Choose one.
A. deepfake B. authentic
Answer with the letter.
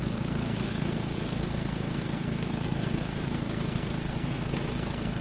A